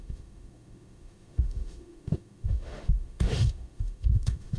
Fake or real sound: fake